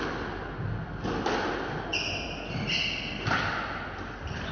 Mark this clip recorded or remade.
recorded